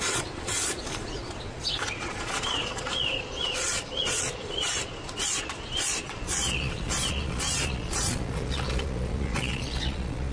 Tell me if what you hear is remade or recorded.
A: remade